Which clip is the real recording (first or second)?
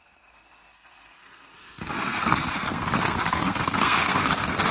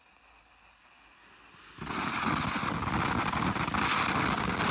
second